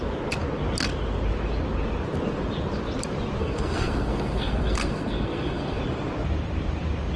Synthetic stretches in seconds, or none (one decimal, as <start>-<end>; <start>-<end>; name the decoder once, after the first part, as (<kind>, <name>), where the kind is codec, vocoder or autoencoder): 3.4-5.8 (codec, SNAC)